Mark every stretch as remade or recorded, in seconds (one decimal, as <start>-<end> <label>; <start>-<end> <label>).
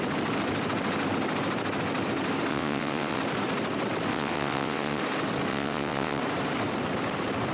0.0-2.5 recorded; 2.5-3.2 remade; 3.2-4.1 recorded; 4.1-5.0 remade; 5.0-5.5 recorded; 5.5-6.2 remade; 6.2-7.5 recorded